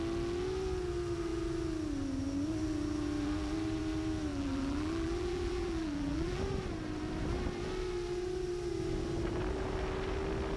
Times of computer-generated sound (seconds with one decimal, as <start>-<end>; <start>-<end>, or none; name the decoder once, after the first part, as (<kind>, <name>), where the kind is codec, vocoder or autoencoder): 4.3-6.4 (vocoder, BigVGAN v2)